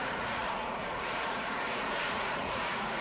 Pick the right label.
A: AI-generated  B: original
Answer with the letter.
A